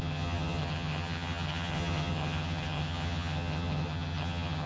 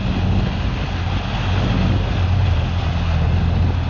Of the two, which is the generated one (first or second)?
first